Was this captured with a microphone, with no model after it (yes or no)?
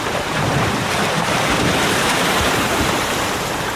no